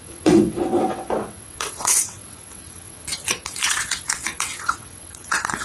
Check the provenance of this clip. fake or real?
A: fake